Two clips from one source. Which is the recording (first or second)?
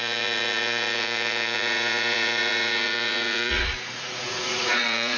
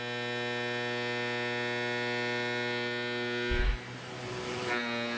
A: second